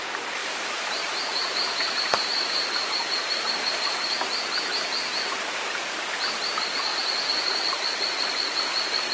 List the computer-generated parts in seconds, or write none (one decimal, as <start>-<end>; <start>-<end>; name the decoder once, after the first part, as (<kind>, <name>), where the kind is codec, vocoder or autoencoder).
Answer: 0.4-4.1 (vocoder, BigVGAN v2); 6.9-7.4